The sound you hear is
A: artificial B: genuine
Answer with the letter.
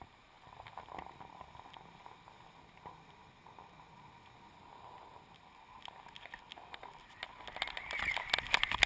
B